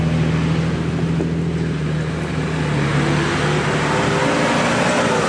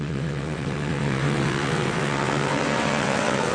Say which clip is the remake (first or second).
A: second